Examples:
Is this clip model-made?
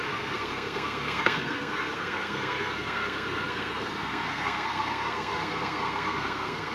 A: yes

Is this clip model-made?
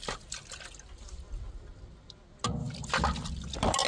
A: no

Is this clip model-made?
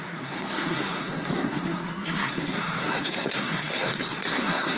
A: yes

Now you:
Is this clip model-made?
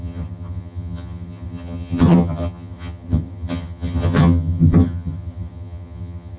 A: yes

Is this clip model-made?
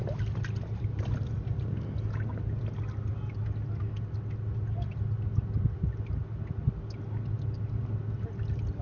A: no